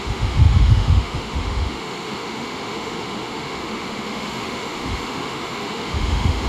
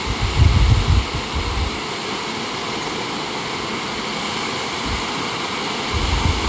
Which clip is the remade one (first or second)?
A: first